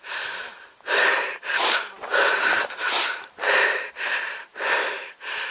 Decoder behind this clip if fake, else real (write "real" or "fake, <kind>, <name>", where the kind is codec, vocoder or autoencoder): real